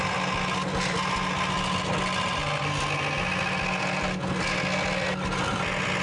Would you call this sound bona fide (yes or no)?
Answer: yes